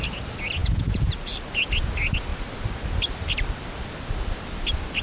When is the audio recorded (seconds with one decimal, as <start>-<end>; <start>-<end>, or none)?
0.0-0.6; 1.1-5.0